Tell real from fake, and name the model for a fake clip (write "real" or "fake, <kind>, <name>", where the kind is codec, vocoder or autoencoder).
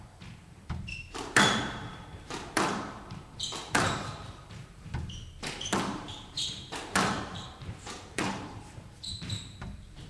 fake, vocoder, BigVGAN v2